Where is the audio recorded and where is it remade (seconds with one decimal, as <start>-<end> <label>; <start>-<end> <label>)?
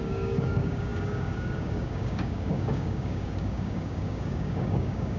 0.0-5.2 remade